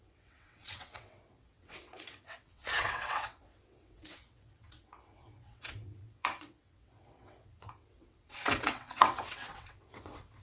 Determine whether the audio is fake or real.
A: fake